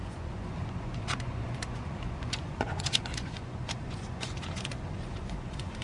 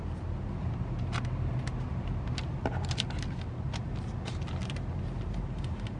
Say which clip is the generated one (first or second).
first